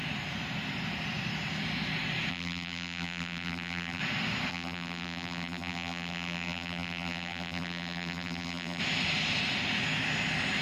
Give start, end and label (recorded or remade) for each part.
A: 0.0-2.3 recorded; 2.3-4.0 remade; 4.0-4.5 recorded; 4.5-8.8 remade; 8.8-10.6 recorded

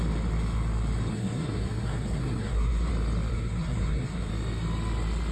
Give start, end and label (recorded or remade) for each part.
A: 0.0-1.1 recorded; 1.1-2.9 remade; 2.9-3.3 recorded; 3.3-4.3 remade; 4.3-5.3 recorded

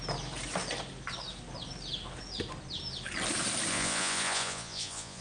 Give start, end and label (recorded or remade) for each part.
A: 0.0-3.7 recorded; 3.7-5.2 remade

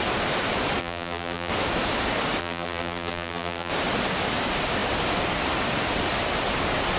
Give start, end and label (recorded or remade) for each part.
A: 0.0-0.8 recorded; 0.8-1.5 remade; 1.5-2.4 recorded; 2.4-3.7 remade; 3.7-7.0 recorded

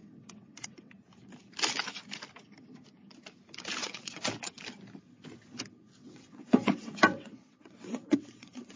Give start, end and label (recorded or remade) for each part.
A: 0.0-0.9 remade; 0.9-3.8 recorded; 3.8-4.3 remade; 4.3-6.0 recorded; 6.0-8.8 remade

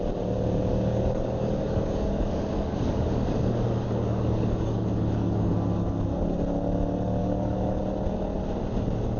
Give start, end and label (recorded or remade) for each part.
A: 0.0-0.7 recorded; 0.7-5.5 remade; 5.5-7.2 recorded; 7.2-7.8 remade; 7.8-9.2 recorded

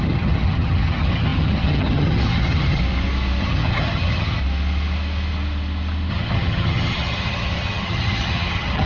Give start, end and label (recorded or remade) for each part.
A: 0.0-2.8 remade; 2.8-3.4 recorded; 3.4-4.4 remade; 4.4-6.1 recorded; 6.1-8.9 remade